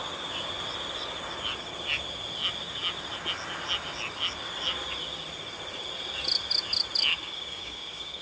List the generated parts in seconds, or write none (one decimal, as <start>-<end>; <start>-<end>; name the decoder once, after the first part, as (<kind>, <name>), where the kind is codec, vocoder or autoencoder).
7.1-8.2 (codec, DAC)